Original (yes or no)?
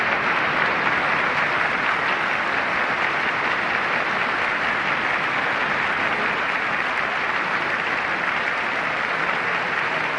yes